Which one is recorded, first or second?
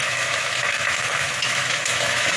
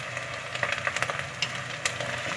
second